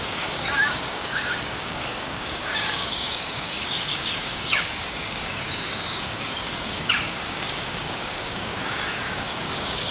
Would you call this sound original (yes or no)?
no